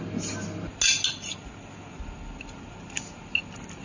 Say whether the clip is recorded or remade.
recorded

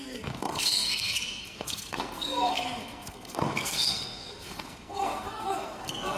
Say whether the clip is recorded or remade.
remade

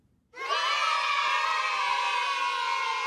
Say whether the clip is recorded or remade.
recorded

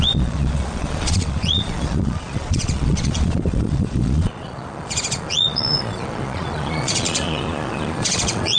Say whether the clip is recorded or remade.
remade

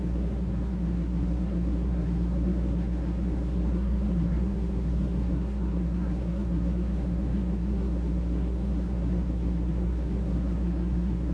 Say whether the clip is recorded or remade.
remade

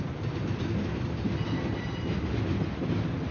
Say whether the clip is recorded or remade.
recorded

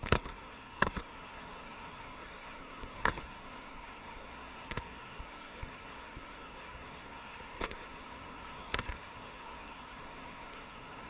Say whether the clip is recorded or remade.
remade